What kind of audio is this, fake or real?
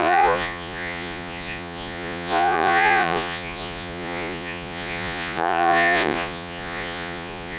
fake